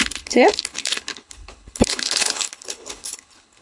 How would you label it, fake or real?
fake